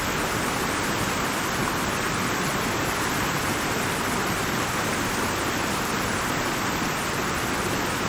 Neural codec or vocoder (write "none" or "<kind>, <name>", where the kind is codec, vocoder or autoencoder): none